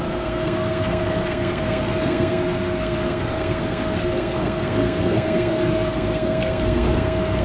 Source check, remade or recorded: remade